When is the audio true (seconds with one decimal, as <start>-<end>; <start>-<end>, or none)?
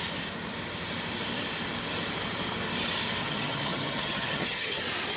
0.0-3.2; 4.8-5.2